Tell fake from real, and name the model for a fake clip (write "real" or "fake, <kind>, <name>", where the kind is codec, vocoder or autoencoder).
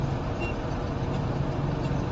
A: fake, vocoder, BigVGAN v2